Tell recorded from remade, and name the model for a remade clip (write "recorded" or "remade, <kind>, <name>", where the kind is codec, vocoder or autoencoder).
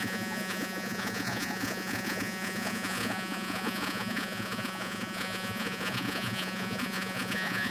remade, vocoder, Vocos